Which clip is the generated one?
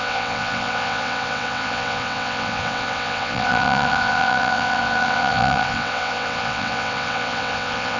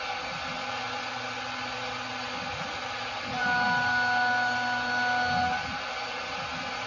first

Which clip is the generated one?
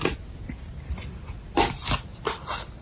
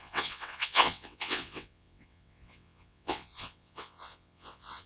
second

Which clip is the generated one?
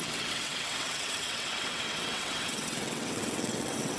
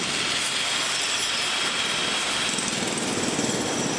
first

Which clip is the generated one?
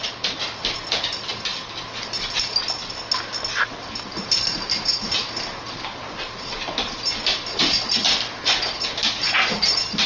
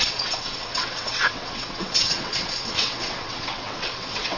second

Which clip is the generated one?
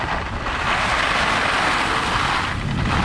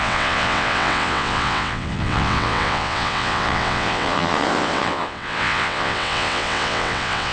second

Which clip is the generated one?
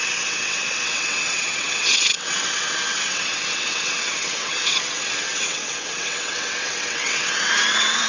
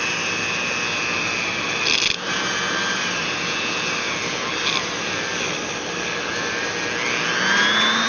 first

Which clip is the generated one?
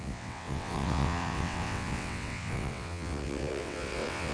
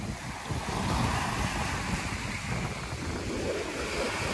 first